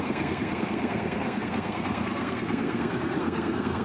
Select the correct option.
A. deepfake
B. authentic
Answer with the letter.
A